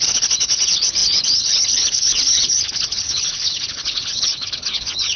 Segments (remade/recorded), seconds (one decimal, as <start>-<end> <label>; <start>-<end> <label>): 0.0-5.2 remade